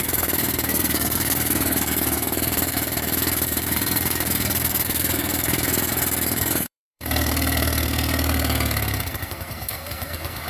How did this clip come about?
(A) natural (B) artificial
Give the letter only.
B